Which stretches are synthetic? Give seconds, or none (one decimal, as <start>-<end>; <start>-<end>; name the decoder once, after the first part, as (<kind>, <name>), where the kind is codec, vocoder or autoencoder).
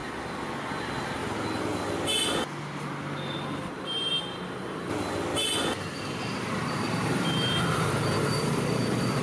0.0-0.5 (vocoder, BigVGAN v2); 5.3-9.2